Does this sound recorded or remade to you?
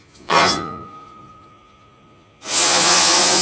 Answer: remade